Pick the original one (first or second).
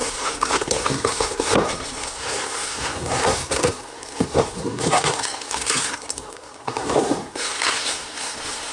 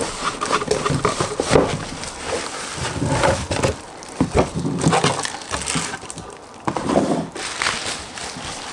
second